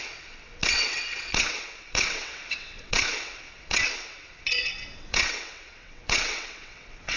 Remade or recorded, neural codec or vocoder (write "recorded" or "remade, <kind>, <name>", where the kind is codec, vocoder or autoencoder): remade, vocoder, WaveNeXt